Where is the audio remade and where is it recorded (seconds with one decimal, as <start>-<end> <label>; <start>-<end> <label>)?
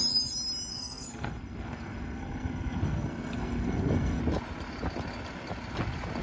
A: 0.0-0.7 recorded; 0.7-4.2 remade; 4.2-6.2 recorded